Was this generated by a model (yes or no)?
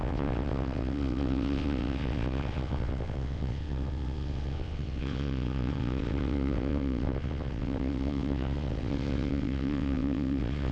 yes